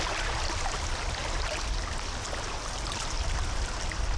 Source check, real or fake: real